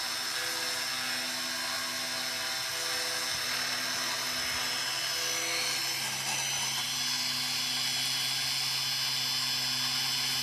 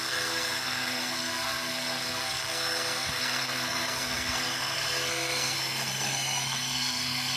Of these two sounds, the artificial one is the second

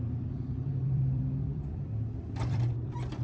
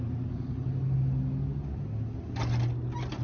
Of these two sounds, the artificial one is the first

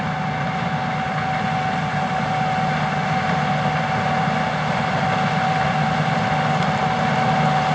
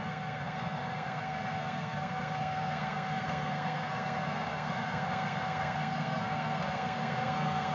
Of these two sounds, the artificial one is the second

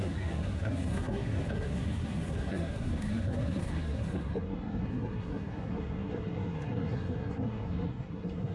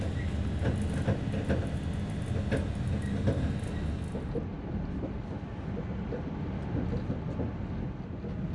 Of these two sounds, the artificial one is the first